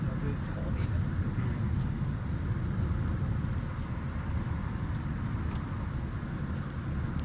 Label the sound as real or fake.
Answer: real